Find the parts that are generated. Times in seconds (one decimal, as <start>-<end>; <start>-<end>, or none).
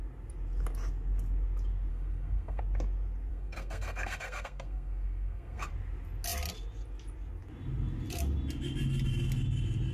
1.9-2.6; 3.3-5.7